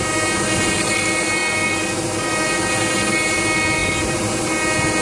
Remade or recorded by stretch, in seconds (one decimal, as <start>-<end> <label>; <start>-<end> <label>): 0.0-5.0 recorded